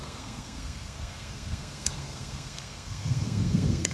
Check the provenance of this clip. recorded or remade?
remade